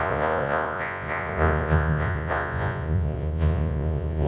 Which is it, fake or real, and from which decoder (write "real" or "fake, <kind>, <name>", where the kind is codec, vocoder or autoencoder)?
fake, vocoder, Vocos